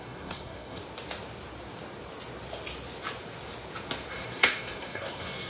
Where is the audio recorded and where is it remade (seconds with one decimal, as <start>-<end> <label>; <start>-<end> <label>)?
0.0-0.8 remade; 0.8-4.1 recorded; 4.1-5.5 remade